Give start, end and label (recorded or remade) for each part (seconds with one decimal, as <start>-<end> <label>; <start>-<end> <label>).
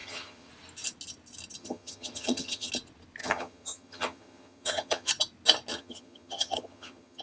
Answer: 0.0-0.5 remade; 0.5-1.6 recorded; 1.6-2.7 remade; 2.7-3.2 recorded; 3.2-5.1 remade; 5.1-5.7 recorded; 5.7-7.2 remade